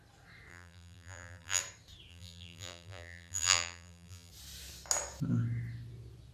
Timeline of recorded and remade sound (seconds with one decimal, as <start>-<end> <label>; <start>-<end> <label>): 0.0-0.5 recorded; 0.5-1.6 remade; 1.6-2.1 recorded; 2.1-4.3 remade; 4.3-6.3 recorded